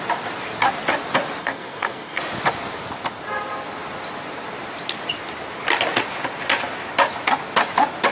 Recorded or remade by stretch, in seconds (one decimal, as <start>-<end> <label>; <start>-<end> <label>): 0.0-1.4 recorded; 1.4-2.2 remade; 2.2-8.1 recorded